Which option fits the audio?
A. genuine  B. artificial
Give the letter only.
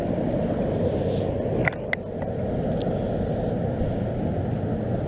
A